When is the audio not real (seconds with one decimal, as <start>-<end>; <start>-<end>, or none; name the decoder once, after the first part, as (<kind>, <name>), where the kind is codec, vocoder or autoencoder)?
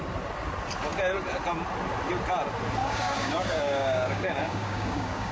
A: 2.8-5.3 (codec, DAC)